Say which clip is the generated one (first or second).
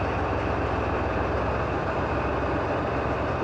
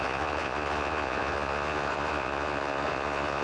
second